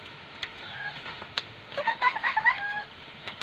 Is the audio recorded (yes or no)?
no